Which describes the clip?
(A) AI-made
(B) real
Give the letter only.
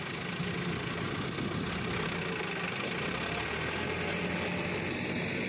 B